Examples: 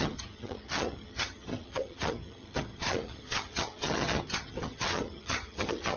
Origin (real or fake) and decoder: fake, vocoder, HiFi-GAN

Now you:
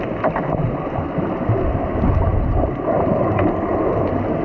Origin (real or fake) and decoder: real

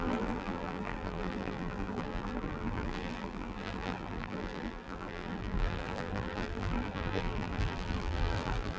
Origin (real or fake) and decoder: fake, vocoder, BigVGAN v2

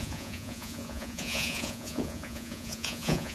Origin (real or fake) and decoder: fake, vocoder, Vocos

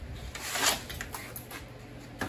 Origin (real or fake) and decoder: real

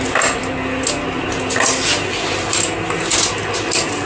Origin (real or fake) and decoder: real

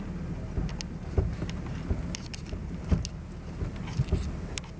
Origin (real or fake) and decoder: real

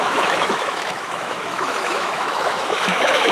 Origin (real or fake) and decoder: fake, autoencoder, DAC-VAE